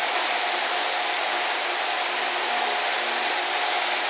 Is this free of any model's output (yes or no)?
yes